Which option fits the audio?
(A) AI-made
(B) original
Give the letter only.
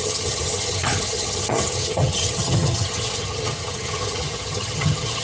A